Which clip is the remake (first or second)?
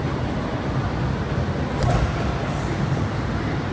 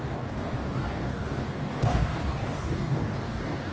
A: second